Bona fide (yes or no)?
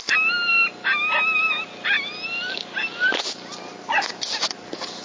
yes